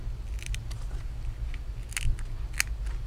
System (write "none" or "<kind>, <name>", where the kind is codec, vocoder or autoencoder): none